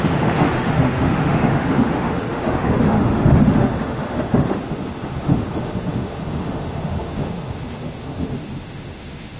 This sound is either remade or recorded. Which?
remade